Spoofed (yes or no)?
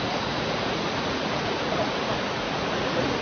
yes